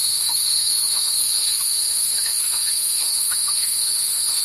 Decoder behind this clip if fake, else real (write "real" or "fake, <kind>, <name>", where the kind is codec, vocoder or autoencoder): fake, autoencoder, DAC-VAE